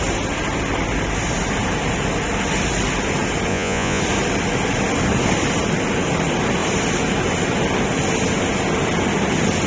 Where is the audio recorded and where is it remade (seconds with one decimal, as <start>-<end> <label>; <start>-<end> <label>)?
0.0-3.5 recorded; 3.5-4.0 remade; 4.0-9.7 recorded